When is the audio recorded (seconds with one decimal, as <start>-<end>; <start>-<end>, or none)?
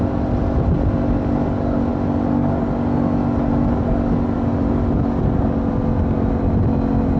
0.0-7.2